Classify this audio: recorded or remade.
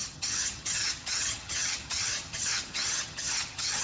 remade